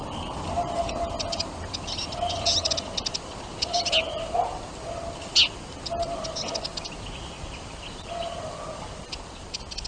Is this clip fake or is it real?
real